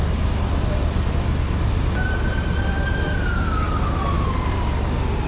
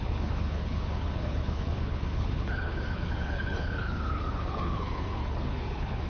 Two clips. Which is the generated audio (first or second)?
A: second